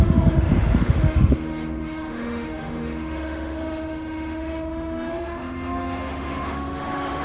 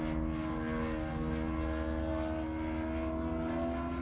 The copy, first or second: first